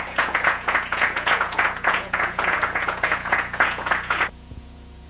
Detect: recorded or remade remade